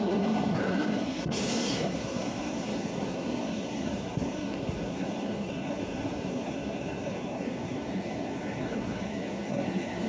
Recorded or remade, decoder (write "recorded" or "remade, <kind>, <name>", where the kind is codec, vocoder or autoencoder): remade, codec, SNAC